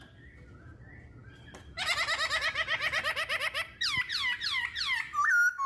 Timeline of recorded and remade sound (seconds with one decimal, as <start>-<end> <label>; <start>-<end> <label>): 0.0-5.7 recorded